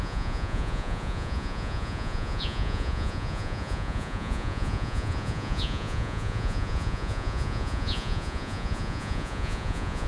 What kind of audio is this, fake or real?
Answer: fake